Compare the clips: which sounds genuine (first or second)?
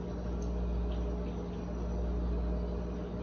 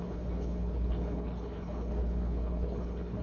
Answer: first